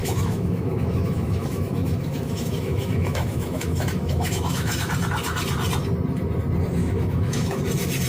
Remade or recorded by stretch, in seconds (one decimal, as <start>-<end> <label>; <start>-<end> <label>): 0.0-4.9 remade; 4.9-6.8 recorded; 6.8-7.6 remade; 7.6-8.1 recorded